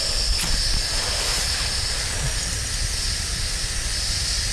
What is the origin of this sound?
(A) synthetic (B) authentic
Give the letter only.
B